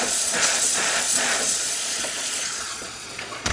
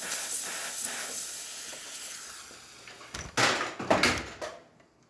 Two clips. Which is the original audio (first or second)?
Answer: second